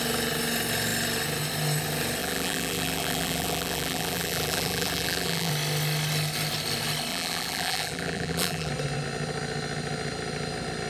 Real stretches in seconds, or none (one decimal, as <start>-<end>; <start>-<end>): 0.0-2.2; 5.5-7.1; 8.7-10.9